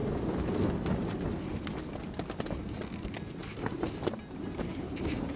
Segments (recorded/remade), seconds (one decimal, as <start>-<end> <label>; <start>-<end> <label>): 0.0-5.4 recorded

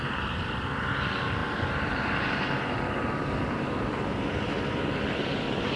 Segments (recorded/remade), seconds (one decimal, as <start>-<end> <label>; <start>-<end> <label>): 0.0-5.8 remade

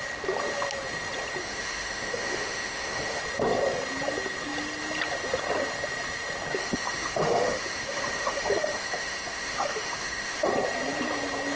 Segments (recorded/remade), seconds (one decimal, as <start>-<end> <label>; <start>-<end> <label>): 0.0-1.4 recorded; 1.4-3.2 remade; 3.2-6.6 recorded; 6.6-10.5 remade; 10.5-11.6 recorded

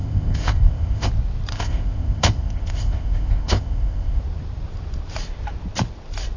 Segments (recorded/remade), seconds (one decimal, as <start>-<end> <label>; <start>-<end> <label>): 0.0-1.1 remade; 1.1-1.5 recorded; 1.5-4.2 remade; 4.2-6.4 recorded

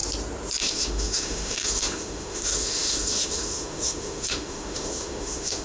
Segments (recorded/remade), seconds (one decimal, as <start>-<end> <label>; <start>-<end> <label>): 0.0-0.6 recorded; 0.6-5.6 remade

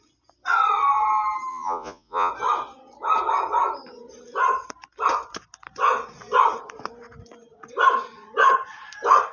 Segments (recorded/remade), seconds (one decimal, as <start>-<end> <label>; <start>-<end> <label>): 0.0-1.5 recorded; 1.5-2.3 remade; 2.3-9.3 recorded

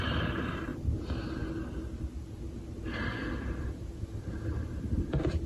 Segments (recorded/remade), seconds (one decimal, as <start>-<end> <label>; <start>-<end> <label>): 0.0-0.7 remade; 0.7-2.8 recorded; 2.8-3.2 remade; 3.2-4.2 recorded; 4.2-5.5 remade